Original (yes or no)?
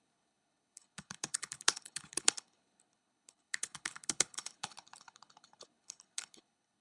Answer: no